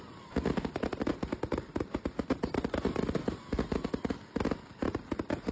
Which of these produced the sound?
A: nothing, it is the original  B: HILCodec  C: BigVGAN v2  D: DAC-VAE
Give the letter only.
A